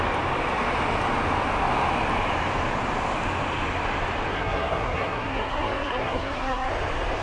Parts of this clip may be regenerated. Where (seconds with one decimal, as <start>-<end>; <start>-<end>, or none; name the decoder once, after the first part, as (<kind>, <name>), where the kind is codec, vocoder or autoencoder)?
4.3-6.7 (codec, SNAC)